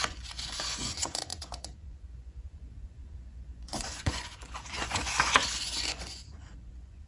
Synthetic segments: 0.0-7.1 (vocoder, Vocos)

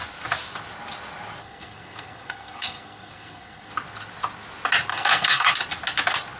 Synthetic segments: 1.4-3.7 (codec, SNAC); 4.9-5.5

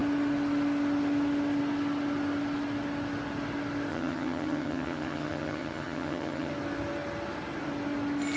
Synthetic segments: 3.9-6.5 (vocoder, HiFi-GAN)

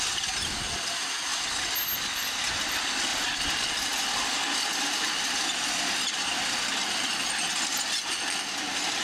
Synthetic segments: 3.1-4.3 (vocoder, BigVGAN v2)

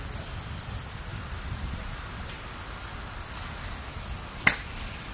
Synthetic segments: 1.1-2.1 (vocoder, BigVGAN v2)

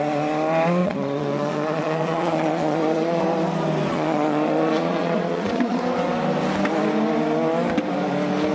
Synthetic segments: 0.8-3.2 (vocoder, Vocos); 3.9-5.8